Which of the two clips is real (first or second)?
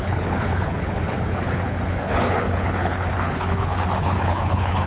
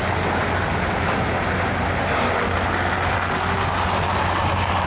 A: second